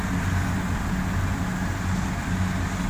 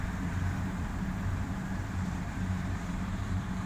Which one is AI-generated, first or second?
second